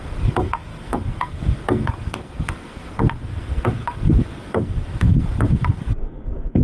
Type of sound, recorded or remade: remade